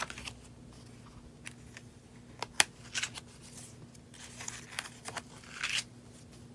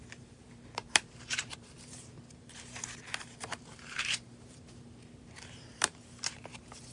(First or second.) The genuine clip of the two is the first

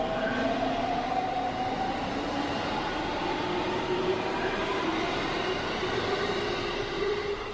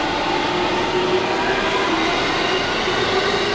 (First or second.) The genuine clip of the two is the second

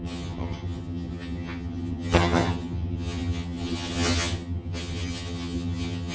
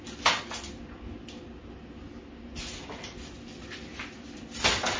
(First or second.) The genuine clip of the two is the second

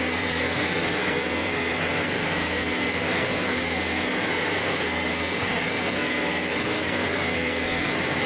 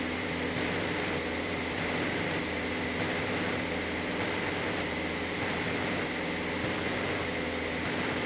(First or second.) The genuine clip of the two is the second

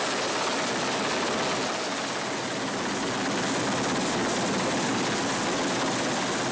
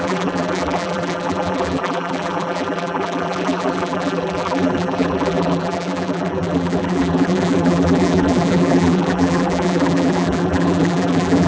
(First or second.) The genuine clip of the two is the first